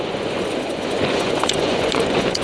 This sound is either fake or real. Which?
fake